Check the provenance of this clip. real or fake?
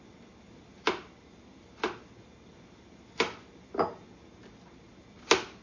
real